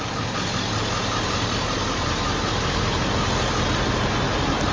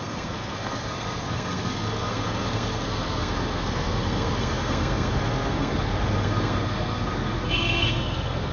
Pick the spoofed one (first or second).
second